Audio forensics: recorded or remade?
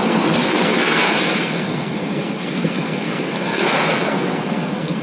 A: remade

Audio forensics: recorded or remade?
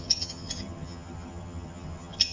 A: remade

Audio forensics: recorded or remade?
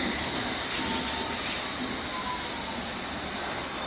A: recorded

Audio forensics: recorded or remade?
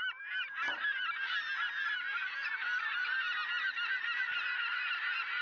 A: recorded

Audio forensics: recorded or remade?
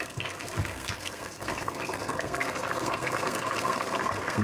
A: remade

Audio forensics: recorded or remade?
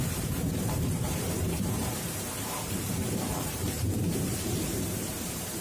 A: remade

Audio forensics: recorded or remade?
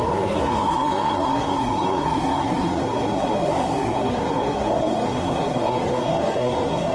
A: remade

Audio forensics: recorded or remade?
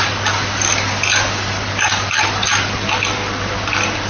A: recorded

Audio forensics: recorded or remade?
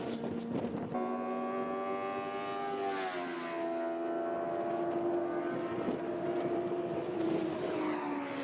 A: recorded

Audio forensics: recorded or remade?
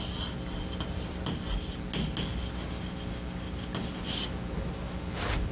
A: recorded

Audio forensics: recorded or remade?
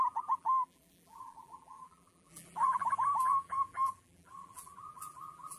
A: remade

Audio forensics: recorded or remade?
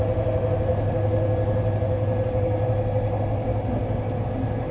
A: recorded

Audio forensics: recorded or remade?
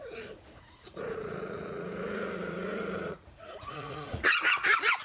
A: remade